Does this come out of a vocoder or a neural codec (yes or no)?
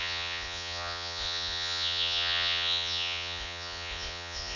yes